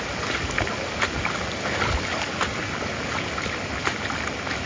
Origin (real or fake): real